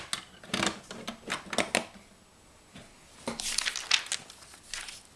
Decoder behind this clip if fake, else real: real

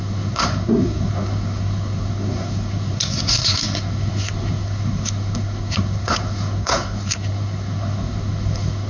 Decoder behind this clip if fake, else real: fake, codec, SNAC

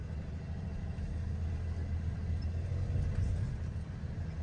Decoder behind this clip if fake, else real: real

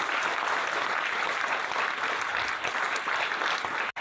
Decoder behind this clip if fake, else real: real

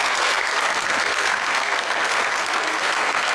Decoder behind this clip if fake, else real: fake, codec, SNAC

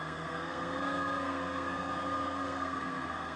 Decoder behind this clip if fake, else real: fake, codec, SNAC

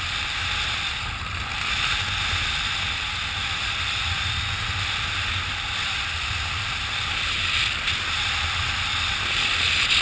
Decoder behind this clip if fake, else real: real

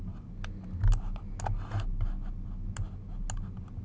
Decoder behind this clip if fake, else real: real